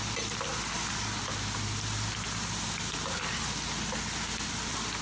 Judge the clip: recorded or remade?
recorded